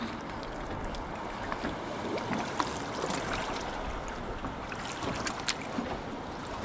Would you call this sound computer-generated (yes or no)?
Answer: no